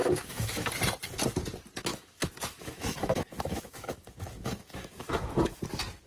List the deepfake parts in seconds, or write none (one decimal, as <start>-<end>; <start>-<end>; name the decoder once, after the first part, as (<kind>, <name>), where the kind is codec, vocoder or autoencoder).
0.0-0.7 (autoencoder, DAC-VAE); 1.9-5.6